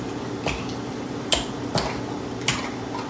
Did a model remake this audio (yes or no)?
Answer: no